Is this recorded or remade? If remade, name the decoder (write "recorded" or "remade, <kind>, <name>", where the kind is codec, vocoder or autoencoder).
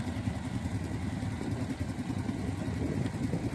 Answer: recorded